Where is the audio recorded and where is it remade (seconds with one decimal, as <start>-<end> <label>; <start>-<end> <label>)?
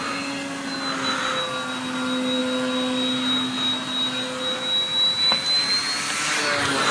0.0-6.9 recorded